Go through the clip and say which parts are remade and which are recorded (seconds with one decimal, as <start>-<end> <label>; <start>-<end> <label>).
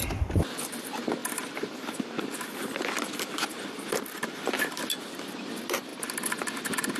0.0-7.0 recorded